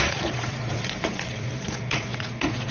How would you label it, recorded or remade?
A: remade